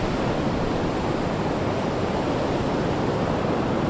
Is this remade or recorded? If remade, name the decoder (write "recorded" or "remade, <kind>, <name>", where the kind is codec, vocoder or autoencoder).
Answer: recorded